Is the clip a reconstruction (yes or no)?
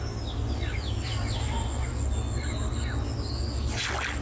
no